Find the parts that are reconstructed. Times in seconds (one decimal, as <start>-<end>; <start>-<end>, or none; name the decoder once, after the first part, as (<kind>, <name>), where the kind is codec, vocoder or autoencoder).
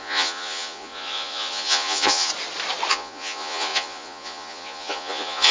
0.0-2.3 (vocoder, Vocos); 2.9-5.5